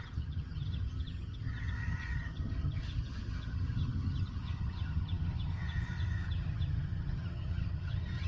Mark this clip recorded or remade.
remade